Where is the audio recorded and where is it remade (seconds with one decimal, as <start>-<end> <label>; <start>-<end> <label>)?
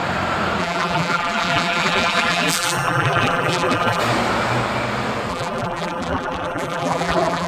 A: 0.0-0.6 recorded; 0.6-4.0 remade; 4.0-5.3 recorded; 5.3-7.5 remade